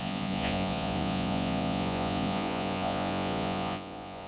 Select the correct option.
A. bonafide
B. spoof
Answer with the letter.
B